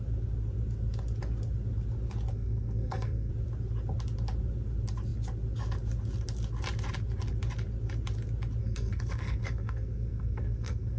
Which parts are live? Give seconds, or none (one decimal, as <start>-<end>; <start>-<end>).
0.0-2.3; 3.3-8.6

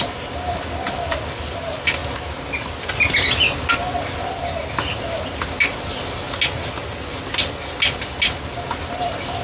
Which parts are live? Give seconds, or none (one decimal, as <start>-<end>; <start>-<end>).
0.0-9.4